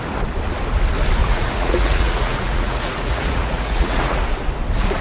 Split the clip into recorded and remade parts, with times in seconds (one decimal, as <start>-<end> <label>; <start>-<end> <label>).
0.0-1.2 recorded; 1.2-4.2 remade; 4.2-5.0 recorded